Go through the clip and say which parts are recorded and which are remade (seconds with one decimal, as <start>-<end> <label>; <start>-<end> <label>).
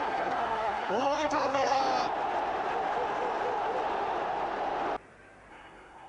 0.0-1.8 remade; 1.8-5.5 recorded; 5.5-6.1 remade